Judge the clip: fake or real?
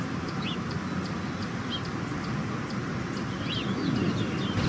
real